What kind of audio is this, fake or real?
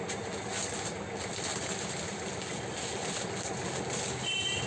real